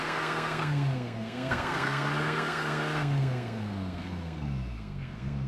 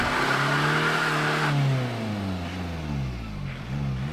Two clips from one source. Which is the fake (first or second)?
first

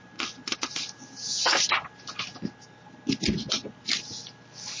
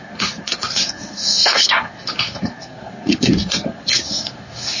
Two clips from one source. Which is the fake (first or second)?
second